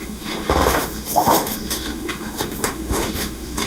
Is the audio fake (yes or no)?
yes